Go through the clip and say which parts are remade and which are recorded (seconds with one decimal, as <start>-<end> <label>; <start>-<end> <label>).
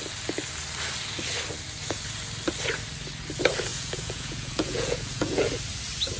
0.0-3.7 recorded; 3.7-5.5 remade; 5.5-6.2 recorded